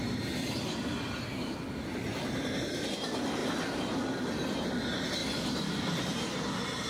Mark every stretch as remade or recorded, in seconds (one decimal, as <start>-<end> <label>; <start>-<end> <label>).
0.0-0.8 remade; 0.8-2.1 recorded; 2.1-2.9 remade; 2.9-5.2 recorded; 5.2-6.3 remade; 6.3-6.9 recorded